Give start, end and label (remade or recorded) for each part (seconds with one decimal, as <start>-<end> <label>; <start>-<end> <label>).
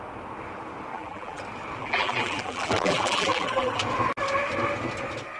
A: 0.0-0.9 recorded; 0.9-1.4 remade; 1.4-1.8 recorded; 1.8-3.8 remade; 3.8-5.4 recorded